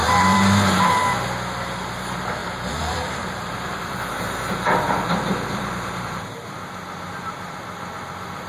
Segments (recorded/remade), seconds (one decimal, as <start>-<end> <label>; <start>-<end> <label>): 0.0-1.0 remade; 1.0-2.4 recorded; 2.4-6.6 remade; 6.6-8.5 recorded